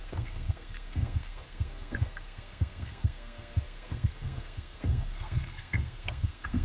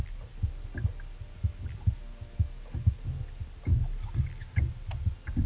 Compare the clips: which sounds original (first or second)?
second